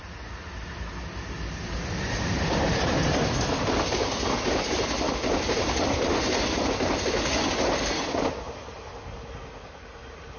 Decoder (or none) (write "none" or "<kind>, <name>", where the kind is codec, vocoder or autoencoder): none